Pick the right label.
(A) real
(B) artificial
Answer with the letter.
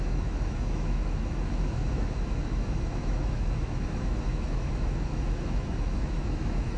B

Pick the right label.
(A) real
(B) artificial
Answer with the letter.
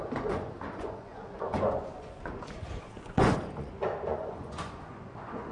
B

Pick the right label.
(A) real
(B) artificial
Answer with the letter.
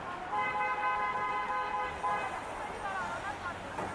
A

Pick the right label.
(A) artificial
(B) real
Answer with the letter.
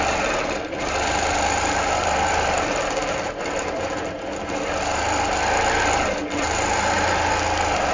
A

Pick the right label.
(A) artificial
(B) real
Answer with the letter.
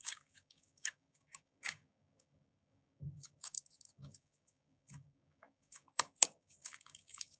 A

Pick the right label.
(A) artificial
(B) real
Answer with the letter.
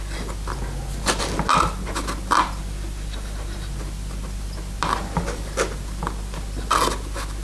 B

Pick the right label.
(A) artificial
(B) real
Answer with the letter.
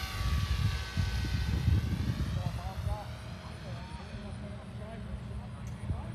B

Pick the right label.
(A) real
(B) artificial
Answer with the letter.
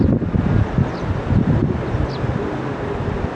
A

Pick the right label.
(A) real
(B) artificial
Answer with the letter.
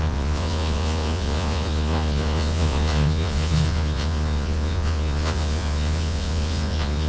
B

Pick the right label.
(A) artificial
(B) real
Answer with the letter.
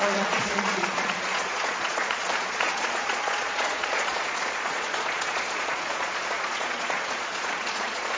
A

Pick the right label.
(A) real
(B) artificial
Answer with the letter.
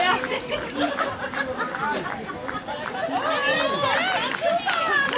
A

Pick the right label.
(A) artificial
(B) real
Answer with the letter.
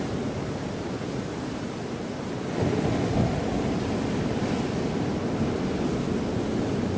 B